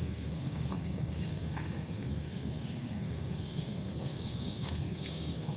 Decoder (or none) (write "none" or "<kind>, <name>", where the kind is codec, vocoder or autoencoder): codec, SNAC